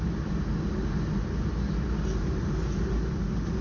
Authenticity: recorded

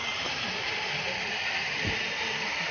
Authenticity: recorded